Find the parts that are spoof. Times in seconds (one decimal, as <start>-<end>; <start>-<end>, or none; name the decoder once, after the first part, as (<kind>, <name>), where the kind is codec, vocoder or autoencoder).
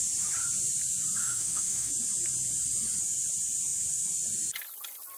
1.2-1.9 (autoencoder, DAC-VAE)